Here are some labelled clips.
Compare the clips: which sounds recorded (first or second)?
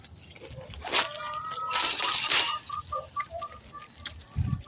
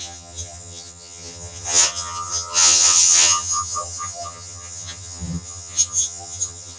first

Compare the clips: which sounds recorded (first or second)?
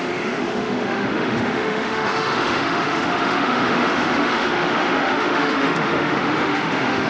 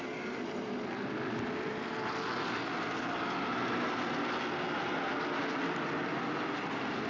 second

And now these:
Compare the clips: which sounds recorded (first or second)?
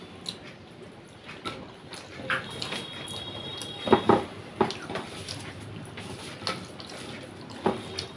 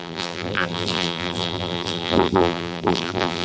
first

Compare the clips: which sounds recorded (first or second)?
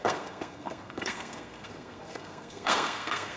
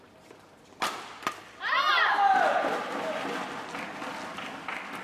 second